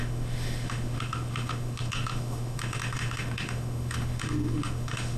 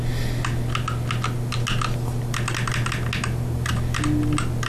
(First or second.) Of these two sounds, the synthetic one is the first